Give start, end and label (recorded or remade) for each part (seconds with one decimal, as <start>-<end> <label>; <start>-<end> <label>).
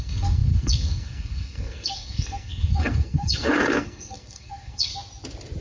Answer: 0.0-4.9 remade; 4.9-5.6 recorded